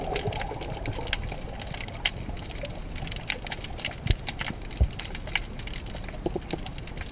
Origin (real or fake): real